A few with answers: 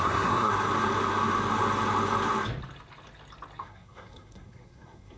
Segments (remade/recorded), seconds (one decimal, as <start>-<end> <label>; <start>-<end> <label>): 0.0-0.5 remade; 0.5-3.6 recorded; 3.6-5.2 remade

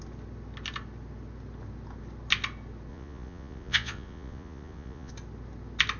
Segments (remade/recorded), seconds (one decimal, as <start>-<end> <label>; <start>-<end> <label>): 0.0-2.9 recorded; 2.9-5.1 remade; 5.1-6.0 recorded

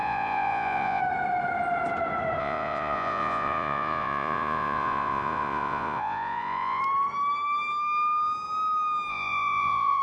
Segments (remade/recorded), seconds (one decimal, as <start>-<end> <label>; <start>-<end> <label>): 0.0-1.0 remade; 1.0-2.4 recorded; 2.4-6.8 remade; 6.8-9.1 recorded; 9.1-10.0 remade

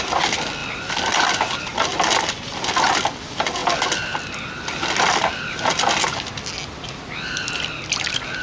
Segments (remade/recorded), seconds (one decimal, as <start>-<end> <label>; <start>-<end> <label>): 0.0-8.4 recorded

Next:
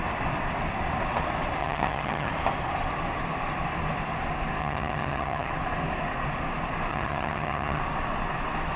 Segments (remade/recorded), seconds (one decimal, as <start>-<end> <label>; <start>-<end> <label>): 0.0-1.6 recorded; 1.6-2.3 remade; 2.3-4.6 recorded; 4.6-5.5 remade; 5.5-6.9 recorded; 6.9-7.8 remade; 7.8-8.8 recorded